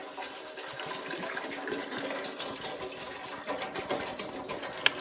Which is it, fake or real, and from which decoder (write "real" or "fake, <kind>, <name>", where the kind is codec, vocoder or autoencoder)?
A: real